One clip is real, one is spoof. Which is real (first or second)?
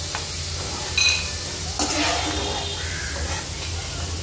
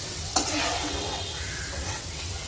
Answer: first